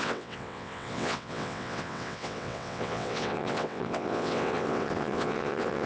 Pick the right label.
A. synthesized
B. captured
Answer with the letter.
A